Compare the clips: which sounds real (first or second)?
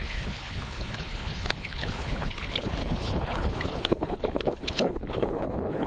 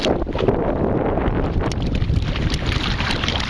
second